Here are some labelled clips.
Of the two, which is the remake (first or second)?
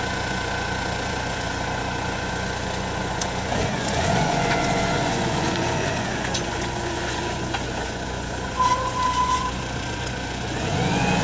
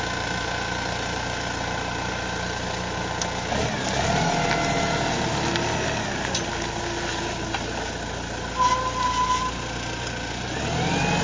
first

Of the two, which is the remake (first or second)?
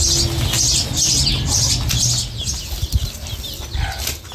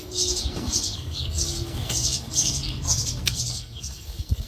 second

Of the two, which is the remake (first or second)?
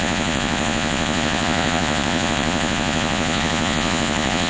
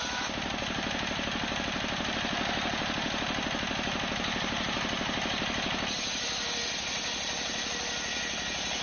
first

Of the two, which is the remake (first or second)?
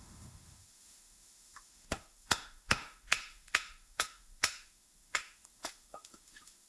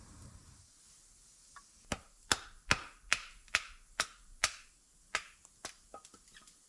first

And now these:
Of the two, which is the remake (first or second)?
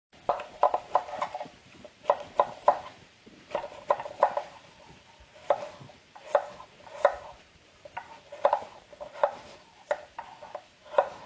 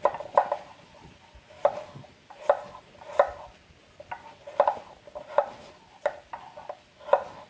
first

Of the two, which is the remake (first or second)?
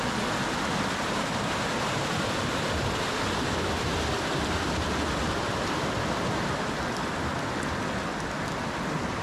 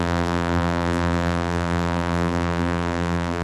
second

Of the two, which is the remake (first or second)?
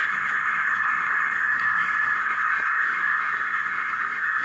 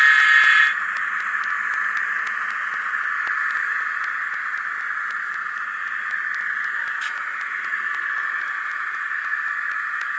first